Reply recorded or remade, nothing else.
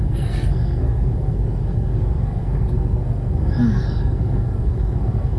remade